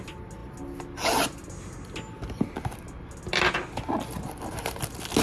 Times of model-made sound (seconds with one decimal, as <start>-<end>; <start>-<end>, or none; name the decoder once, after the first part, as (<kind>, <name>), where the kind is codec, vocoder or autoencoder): none